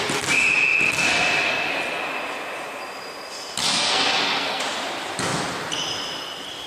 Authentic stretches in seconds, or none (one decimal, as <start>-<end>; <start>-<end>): 0.0-3.7; 4.6-6.7

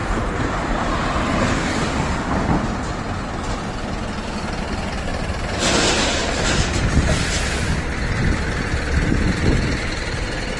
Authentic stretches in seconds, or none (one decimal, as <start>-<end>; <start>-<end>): 0.7-5.1; 6.9-10.6

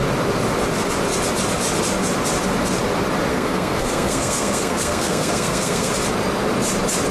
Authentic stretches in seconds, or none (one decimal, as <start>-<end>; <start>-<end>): 0.0-3.3; 5.9-7.1

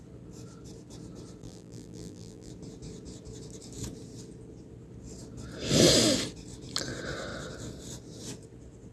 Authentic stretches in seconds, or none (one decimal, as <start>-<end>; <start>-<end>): 0.0-1.4; 2.5-8.9

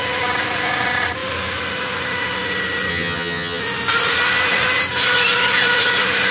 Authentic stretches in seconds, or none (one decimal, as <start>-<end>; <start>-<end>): 0.0-2.9; 3.6-6.3

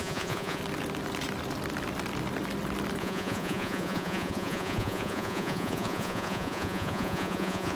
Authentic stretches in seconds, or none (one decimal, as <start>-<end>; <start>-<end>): 0.6-3.0